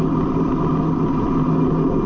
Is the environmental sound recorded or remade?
recorded